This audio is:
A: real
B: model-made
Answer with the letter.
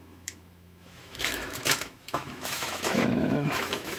B